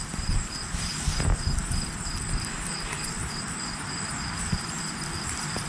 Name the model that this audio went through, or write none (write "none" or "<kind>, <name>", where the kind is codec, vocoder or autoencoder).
none